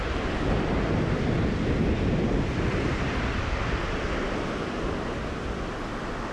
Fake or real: fake